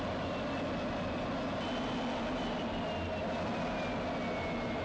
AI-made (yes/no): no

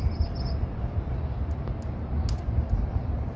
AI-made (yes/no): no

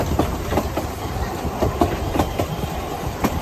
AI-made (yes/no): yes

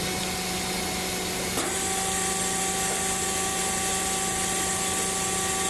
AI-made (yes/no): no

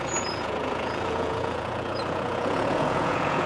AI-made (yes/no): yes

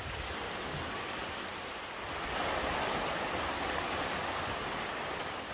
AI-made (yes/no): no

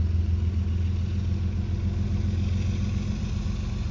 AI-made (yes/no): no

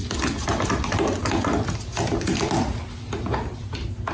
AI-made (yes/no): no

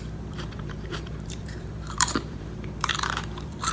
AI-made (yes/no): yes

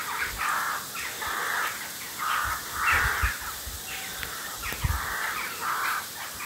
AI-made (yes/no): no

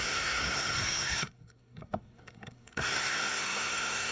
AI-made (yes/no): yes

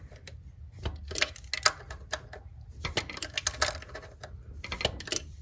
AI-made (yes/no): no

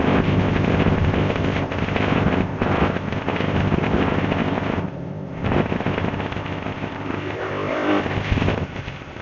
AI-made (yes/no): yes